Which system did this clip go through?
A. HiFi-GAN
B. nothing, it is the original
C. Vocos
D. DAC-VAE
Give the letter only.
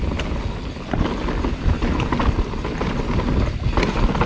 B